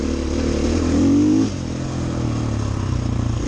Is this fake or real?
real